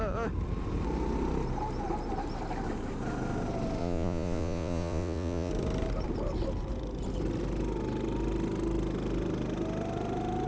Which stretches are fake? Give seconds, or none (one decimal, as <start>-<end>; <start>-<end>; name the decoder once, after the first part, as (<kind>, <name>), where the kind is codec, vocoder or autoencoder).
3.8-5.5 (vocoder, Vocos)